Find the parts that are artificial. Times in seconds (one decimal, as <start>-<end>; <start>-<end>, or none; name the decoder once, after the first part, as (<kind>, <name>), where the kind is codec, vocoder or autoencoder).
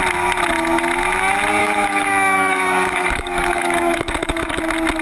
1.6-4.6 (codec, DAC)